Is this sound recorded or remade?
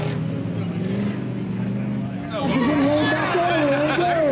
recorded